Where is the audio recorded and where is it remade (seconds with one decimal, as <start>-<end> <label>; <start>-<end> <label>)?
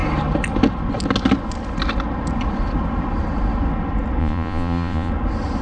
0.0-4.2 recorded; 4.2-5.1 remade; 5.1-5.6 recorded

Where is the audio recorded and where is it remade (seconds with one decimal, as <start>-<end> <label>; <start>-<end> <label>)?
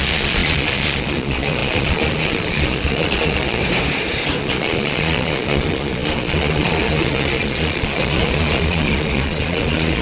0.0-3.6 remade; 3.6-4.4 recorded; 4.4-10.0 remade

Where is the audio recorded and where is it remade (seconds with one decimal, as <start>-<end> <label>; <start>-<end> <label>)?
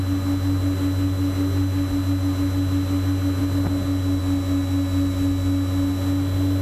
0.0-6.6 recorded